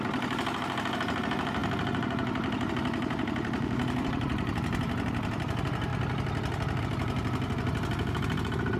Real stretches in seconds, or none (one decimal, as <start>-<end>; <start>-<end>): 5.9-6.8